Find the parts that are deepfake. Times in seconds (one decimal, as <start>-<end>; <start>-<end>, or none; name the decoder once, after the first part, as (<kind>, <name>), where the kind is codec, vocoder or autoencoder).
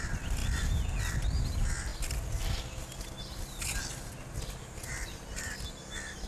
none